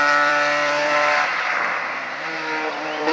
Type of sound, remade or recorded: remade